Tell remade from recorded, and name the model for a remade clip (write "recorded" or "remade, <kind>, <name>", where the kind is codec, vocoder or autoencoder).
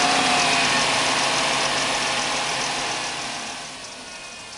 recorded